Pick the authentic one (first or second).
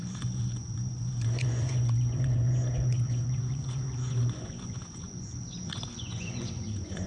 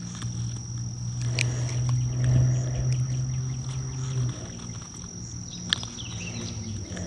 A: second